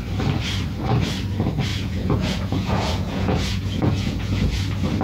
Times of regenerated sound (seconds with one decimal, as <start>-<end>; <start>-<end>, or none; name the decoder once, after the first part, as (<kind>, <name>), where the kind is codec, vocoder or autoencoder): 1.7-4.6 (vocoder, Vocos)